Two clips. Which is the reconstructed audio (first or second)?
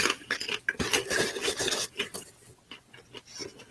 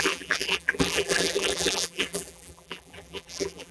second